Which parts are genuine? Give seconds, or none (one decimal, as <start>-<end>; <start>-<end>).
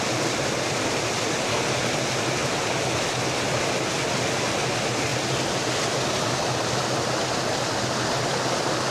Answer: 0.0-8.9